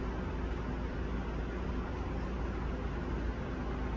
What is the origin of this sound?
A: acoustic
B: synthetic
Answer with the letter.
A